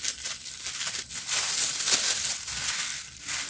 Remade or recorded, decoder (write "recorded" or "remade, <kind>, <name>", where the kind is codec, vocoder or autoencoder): recorded